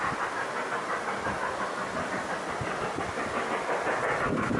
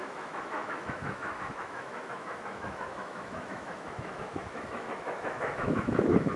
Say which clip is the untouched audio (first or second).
first